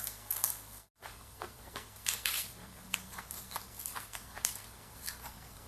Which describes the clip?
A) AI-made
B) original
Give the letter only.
A